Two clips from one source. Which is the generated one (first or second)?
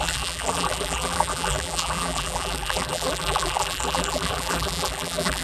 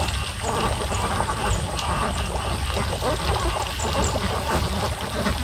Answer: first